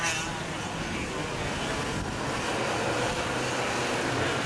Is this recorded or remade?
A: recorded